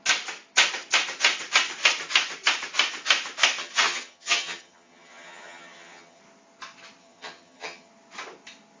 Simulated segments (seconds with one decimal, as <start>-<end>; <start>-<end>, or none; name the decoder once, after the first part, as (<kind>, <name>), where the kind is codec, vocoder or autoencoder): 3.6-6.2 (vocoder, HiFi-GAN); 7.0-7.9